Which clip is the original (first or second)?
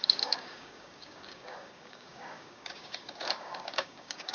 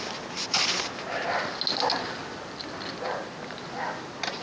second